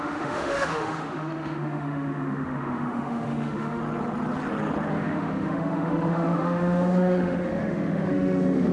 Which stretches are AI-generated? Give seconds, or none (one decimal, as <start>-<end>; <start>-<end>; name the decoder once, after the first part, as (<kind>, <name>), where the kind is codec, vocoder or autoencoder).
0.0-3.8 (autoencoder, DAC-VAE); 4.9-8.7